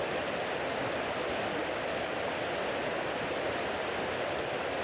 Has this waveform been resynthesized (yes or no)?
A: no